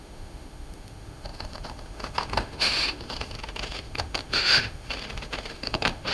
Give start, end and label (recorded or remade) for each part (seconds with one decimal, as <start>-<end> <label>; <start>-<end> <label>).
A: 0.0-6.1 remade